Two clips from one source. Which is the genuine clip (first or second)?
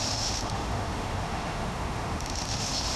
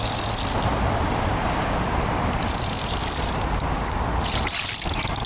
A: second